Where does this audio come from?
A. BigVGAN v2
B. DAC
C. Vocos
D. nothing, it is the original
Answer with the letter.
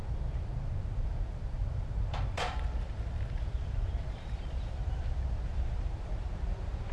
A